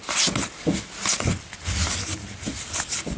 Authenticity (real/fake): real